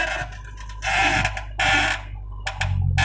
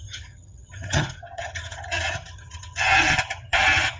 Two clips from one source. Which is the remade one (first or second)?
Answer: second